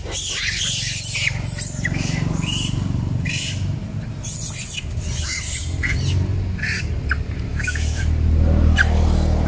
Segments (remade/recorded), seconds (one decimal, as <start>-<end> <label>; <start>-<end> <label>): 0.0-7.5 recorded; 7.5-8.0 remade; 8.0-9.5 recorded